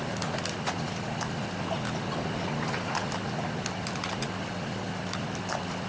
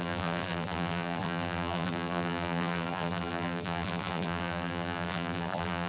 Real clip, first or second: first